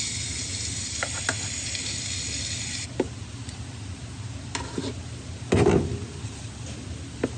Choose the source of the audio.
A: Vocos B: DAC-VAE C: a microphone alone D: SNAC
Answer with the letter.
C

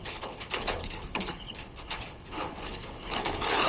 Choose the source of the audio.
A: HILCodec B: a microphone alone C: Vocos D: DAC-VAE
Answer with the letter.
A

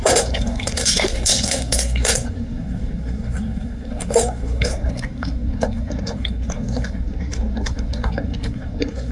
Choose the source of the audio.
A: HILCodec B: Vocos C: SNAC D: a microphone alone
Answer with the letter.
C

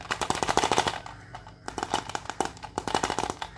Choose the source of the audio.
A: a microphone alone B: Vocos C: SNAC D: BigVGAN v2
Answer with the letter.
A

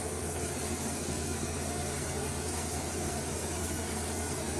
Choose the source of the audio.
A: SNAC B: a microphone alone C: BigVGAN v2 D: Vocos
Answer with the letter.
A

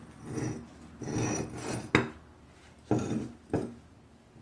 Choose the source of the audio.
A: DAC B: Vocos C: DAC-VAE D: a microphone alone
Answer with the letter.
D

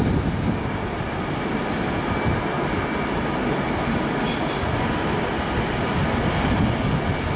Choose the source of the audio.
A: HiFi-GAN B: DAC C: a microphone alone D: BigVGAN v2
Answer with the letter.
C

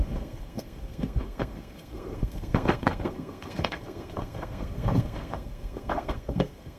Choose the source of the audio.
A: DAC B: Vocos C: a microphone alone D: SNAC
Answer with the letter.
D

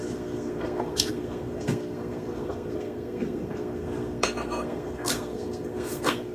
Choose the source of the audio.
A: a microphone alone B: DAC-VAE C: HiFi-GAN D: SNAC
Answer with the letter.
D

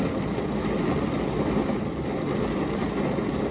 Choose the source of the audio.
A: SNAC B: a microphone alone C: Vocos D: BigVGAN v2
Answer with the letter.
B